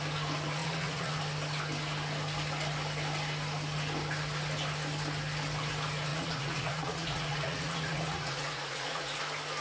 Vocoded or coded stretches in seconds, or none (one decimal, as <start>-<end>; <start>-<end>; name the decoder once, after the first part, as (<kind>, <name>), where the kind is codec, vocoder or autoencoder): 0.6-1.2 (vocoder, Vocos); 6.1-9.2